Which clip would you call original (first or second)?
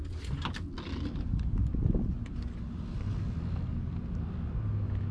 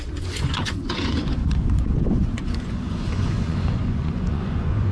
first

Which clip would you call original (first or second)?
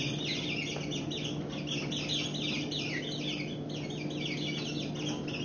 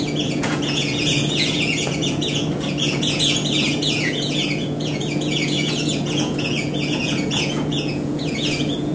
first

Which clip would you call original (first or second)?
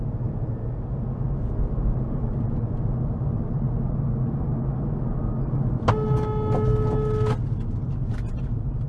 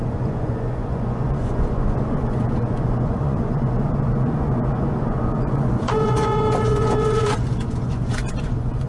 first